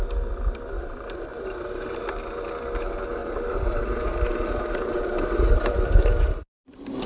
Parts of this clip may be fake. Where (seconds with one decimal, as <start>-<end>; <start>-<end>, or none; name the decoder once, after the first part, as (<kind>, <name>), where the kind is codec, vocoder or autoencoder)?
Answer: 1.3-2.0 (vocoder, BigVGAN v2); 3.2-7.1